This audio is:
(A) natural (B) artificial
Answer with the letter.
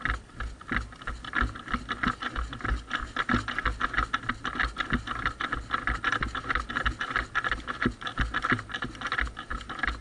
A